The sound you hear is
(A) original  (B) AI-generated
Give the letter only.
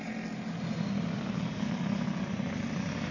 A